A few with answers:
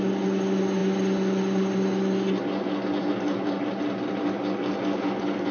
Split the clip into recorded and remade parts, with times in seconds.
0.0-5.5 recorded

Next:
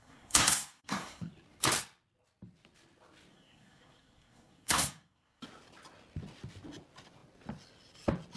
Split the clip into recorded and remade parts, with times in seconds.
0.0-1.3 remade; 1.3-3.3 recorded; 3.3-5.4 remade; 5.4-8.4 recorded

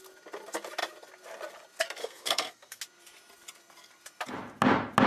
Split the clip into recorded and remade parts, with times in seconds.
0.0-2.0 recorded; 2.0-2.8 remade; 2.8-5.1 recorded